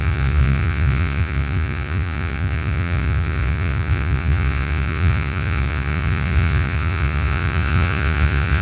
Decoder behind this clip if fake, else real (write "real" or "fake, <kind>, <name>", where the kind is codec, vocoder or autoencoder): fake, vocoder, Vocos